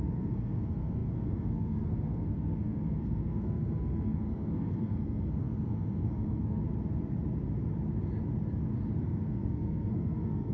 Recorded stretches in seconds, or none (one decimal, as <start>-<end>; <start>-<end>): 6.6-9.0